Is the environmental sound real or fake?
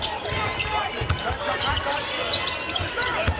real